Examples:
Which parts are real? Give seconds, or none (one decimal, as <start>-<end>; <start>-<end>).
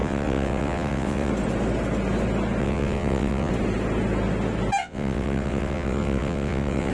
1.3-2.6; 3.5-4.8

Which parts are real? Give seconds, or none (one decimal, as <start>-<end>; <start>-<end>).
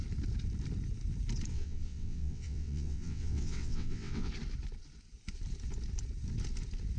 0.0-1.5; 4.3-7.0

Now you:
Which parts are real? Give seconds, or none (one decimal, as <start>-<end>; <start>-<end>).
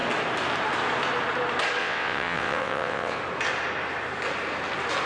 0.0-1.8; 3.2-5.1